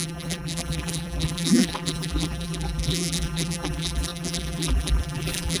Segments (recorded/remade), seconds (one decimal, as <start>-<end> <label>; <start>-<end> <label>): 0.0-5.6 remade